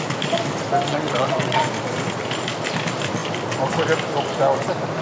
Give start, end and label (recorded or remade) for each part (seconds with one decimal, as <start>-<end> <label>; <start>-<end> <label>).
0.0-0.9 recorded; 0.9-1.6 remade; 1.6-5.0 recorded